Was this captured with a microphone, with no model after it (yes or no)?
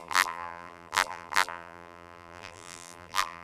no